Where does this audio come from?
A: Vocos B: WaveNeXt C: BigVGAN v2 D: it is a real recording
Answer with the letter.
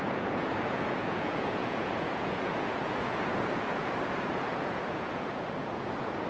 A